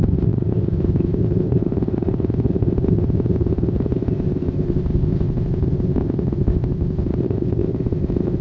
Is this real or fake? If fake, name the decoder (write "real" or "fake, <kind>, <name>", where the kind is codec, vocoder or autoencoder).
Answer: fake, codec, ZipCodec